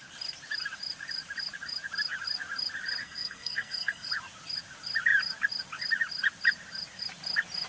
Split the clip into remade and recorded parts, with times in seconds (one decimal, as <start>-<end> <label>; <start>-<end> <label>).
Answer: 0.0-3.0 recorded; 3.0-4.1 remade; 4.1-7.7 recorded